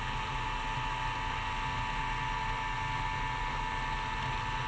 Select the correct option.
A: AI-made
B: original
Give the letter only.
B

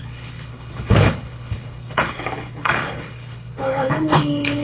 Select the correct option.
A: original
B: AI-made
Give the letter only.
B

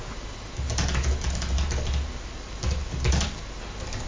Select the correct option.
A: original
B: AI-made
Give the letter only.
A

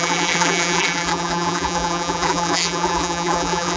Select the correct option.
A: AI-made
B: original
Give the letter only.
A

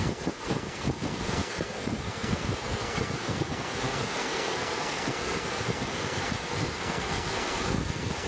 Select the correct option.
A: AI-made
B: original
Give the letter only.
A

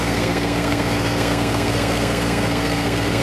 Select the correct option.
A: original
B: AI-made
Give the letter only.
B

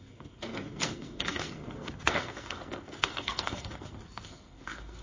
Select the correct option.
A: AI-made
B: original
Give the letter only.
A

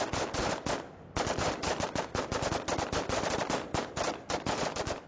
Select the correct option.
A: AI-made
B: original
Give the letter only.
B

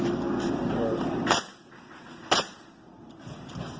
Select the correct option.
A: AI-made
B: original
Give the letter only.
B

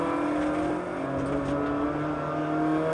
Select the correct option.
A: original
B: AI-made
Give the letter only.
A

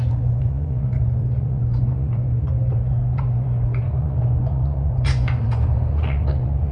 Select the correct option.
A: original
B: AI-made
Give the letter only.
B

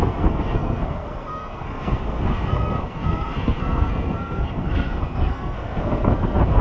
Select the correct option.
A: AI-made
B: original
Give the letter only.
A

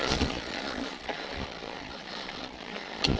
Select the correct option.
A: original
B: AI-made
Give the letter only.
B